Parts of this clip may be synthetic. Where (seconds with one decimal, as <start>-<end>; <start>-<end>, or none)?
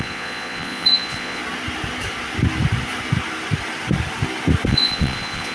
0.0-1.4; 4.7-5.5